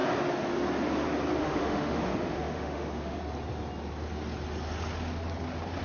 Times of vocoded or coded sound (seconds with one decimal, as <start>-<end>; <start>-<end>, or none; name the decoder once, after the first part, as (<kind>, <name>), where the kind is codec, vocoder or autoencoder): 1.4-3.2 (autoencoder, DAC-VAE)